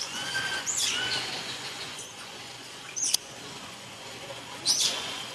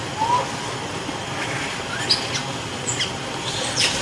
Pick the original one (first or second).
second